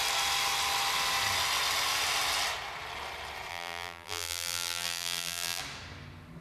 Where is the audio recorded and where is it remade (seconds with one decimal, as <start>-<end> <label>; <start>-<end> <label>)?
0.0-3.5 recorded; 3.5-5.6 remade; 5.6-6.4 recorded